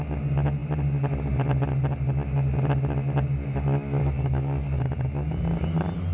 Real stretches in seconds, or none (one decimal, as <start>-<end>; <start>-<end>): 0.0-4.0; 4.8-6.1

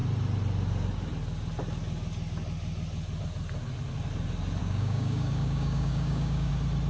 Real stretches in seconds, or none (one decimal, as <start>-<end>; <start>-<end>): 0.0-4.6; 6.5-6.9

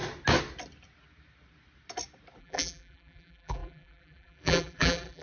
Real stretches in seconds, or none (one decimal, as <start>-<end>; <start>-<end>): 0.0-2.4

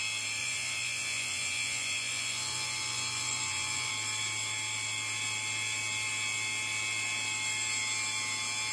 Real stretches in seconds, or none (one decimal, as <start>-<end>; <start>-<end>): 0.0-0.4; 3.9-8.7

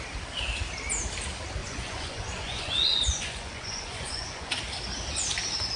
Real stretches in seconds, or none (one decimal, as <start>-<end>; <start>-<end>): 0.0-1.6; 4.5-5.8

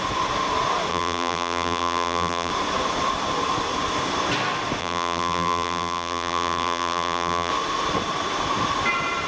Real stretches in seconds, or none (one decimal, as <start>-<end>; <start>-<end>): 0.0-0.9; 2.5-4.8; 7.5-9.3

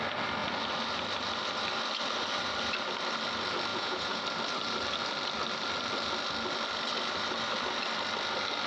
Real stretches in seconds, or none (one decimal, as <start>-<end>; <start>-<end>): 0.0-3.7; 4.2-8.7